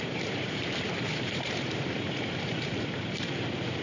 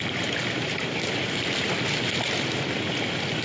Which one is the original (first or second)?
second